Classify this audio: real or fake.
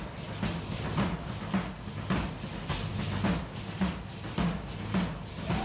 real